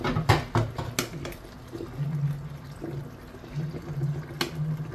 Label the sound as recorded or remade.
recorded